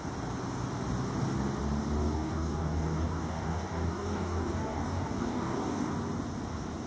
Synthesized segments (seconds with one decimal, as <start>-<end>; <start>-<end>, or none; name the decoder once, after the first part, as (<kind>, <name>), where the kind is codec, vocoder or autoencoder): 2.0-5.9 (codec, DAC)